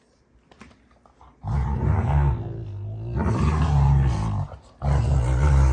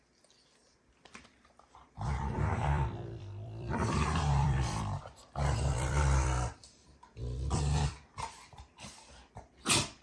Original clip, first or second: first